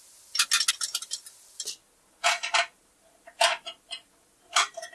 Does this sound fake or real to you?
real